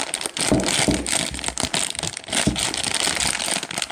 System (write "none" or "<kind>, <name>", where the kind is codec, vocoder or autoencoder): none